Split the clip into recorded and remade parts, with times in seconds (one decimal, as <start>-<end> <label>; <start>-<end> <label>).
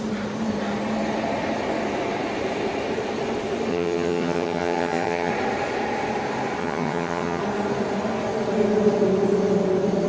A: 0.0-3.7 recorded; 3.7-5.3 remade; 5.3-6.6 recorded; 6.6-7.4 remade; 7.4-10.1 recorded